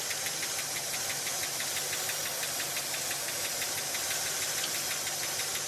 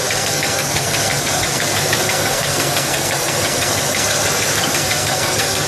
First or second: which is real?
first